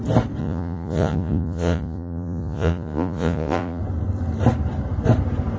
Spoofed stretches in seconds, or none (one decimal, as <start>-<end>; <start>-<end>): 0.4-3.8